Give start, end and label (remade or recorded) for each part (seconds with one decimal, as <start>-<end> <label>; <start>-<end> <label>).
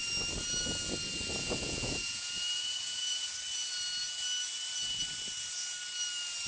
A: 0.0-1.4 recorded; 1.4-3.3 remade; 3.3-6.5 recorded